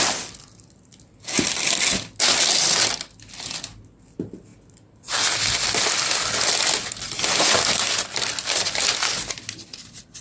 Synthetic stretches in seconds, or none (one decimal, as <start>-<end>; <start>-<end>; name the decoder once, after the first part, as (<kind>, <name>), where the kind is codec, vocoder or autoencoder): none